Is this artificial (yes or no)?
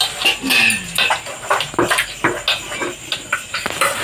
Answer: no